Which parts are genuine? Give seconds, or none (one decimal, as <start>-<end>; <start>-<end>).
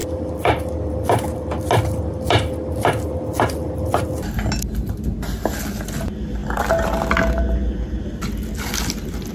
0.0-9.3